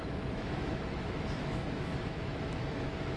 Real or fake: fake